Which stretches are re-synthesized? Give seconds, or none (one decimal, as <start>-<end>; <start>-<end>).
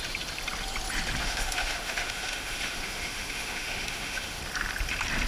1.2-4.4